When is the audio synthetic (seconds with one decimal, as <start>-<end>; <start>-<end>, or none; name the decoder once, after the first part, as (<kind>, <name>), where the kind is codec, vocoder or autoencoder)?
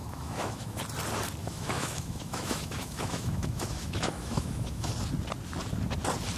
0.0-0.8 (autoencoder, DAC-VAE); 1.4-4.9